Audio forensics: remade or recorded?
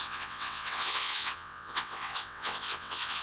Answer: remade